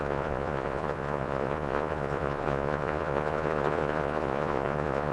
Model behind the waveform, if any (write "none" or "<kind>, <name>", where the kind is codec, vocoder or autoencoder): vocoder, Vocos